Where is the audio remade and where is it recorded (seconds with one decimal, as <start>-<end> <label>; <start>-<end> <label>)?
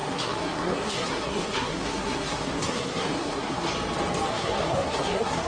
0.0-3.7 remade; 3.7-4.3 recorded; 4.3-5.5 remade